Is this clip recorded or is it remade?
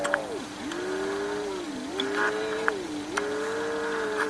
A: recorded